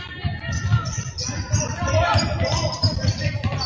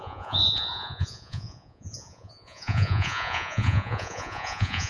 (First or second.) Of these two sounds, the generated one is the second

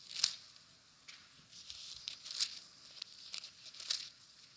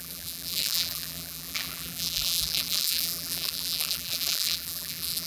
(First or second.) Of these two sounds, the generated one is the second